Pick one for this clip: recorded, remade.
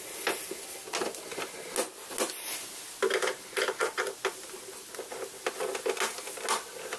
recorded